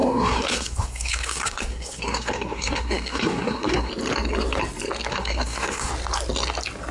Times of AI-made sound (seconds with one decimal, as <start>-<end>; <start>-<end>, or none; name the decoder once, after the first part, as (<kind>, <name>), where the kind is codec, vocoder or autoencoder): 0.0-3.9 (codec, SNAC); 5.1-5.9